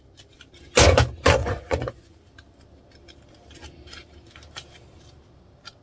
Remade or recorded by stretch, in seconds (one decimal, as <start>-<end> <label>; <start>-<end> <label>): 0.0-1.4 recorded; 1.4-2.2 remade; 2.2-5.8 recorded